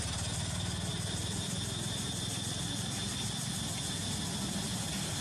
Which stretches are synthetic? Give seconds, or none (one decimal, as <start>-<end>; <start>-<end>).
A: none